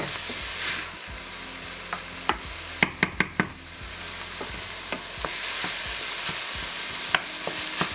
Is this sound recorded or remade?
recorded